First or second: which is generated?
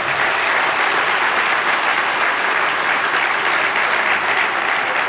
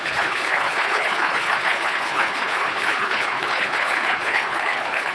second